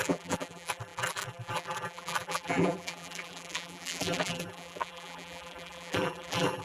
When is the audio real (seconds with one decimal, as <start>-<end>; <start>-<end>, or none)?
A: none